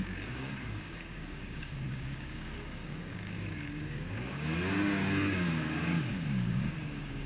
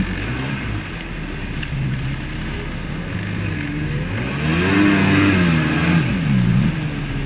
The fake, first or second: first